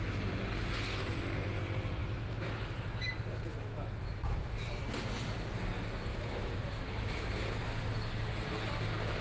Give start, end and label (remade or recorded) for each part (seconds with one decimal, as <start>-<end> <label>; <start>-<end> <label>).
0.0-2.0 recorded; 2.0-3.1 remade; 3.1-3.5 recorded; 3.5-4.7 remade; 4.7-6.1 recorded; 6.1-7.8 remade; 7.8-9.2 recorded